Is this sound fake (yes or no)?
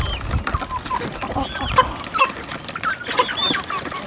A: no